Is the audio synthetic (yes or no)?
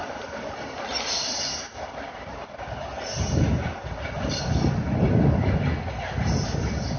no